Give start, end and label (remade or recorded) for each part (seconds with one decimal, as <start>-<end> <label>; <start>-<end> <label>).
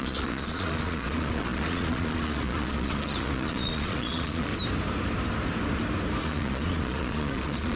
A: 0.0-4.5 remade; 4.5-6.2 recorded; 6.2-7.8 remade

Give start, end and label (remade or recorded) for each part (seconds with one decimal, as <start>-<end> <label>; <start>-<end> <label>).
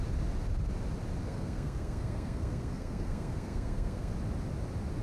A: 0.0-1.2 recorded; 1.2-4.1 remade; 4.1-5.0 recorded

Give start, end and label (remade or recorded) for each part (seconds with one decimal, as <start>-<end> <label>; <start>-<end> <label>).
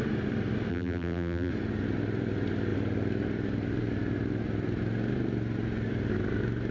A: 0.0-0.7 recorded; 0.7-1.5 remade; 1.5-6.7 recorded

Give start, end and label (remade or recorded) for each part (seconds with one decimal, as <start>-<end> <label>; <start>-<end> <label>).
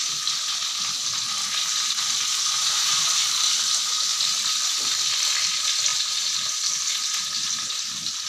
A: 0.0-5.9 recorded; 5.9-6.8 remade; 6.8-8.3 recorded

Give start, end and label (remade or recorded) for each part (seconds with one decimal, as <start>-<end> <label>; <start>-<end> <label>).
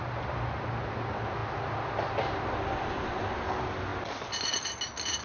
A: 0.0-5.2 recorded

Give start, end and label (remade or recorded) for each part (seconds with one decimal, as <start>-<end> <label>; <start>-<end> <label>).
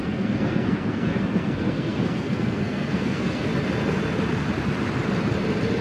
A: 0.0-3.5 remade; 3.5-5.8 recorded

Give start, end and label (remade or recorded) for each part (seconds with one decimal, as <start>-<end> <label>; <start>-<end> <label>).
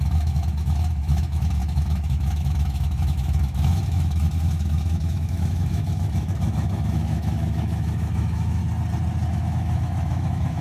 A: 0.0-8.6 remade; 8.6-9.3 recorded; 9.3-10.6 remade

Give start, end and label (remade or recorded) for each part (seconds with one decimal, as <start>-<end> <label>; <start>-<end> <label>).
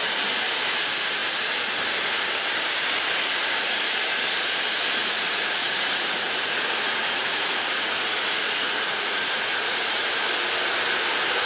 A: 0.0-5.0 recorded; 5.0-10.1 remade; 10.1-11.5 recorded